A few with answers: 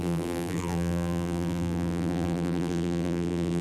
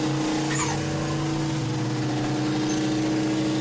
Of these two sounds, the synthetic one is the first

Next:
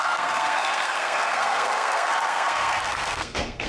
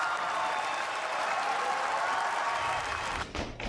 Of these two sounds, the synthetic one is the first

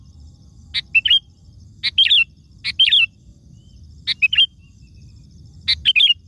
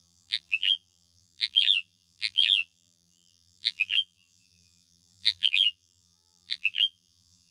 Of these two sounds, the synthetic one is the second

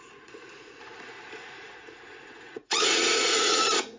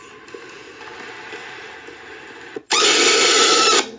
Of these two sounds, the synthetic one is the first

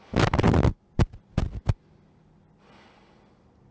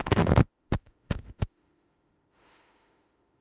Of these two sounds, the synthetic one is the second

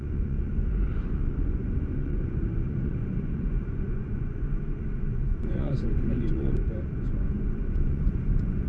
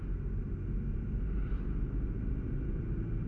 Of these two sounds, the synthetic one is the first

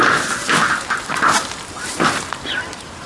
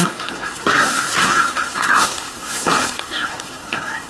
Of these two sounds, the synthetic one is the second